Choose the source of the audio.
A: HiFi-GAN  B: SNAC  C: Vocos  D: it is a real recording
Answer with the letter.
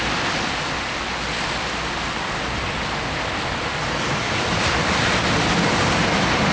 D